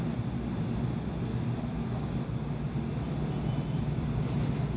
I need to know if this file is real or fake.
real